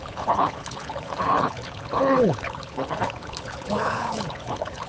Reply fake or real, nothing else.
fake